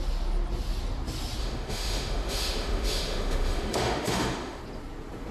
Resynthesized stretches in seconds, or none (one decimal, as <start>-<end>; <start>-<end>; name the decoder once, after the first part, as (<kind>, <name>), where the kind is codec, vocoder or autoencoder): 1.4-4.6 (autoencoder, DAC-VAE)